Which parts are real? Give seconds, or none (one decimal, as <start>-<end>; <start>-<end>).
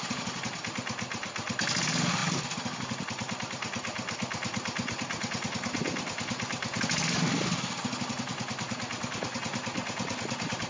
0.0-10.7